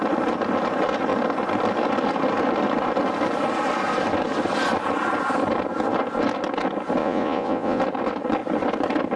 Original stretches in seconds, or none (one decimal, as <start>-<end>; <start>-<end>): 0.0-7.0; 7.8-9.2